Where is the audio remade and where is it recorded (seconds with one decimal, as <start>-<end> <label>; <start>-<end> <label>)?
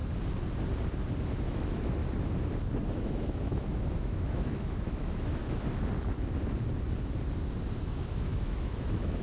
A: 0.0-1.3 recorded; 1.3-2.0 remade; 2.0-2.8 recorded; 2.8-5.4 remade; 5.4-7.8 recorded; 7.8-9.2 remade